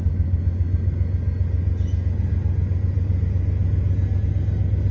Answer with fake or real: real